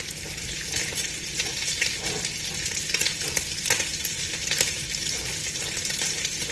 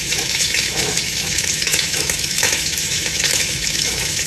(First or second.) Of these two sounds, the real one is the first